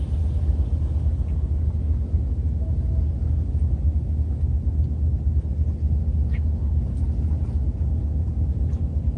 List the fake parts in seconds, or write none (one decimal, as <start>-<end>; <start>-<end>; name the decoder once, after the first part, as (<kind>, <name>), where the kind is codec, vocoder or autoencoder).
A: none